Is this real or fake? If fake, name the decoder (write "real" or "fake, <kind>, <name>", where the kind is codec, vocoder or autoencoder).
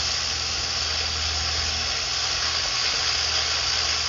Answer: real